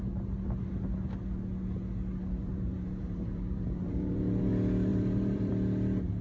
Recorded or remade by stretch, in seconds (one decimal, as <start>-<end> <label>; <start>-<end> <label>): 0.0-2.4 recorded; 2.4-4.5 remade; 4.5-4.9 recorded; 4.9-5.5 remade; 5.5-6.2 recorded